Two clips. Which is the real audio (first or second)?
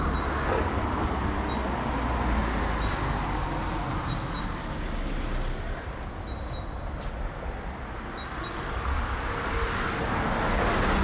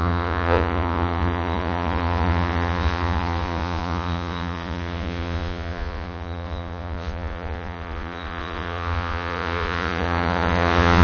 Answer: first